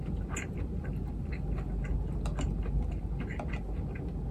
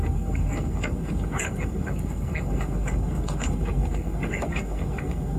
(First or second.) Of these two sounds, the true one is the first